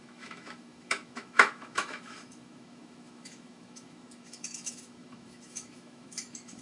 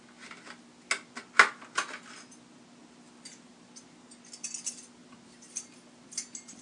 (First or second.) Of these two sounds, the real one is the second